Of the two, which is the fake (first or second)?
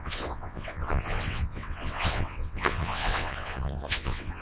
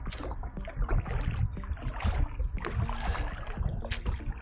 first